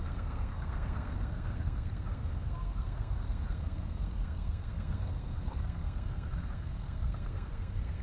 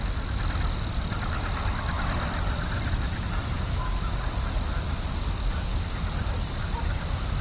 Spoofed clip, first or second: first